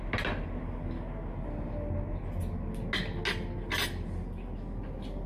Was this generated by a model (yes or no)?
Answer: no